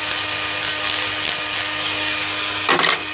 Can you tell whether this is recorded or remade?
recorded